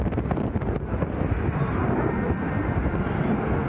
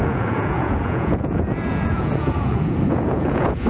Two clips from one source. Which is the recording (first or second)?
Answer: first